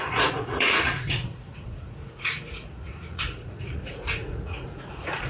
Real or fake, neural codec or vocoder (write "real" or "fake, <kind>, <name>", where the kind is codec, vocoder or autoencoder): fake, vocoder, Vocos